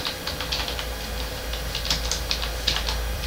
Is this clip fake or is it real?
fake